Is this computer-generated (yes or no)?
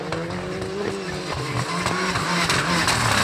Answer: no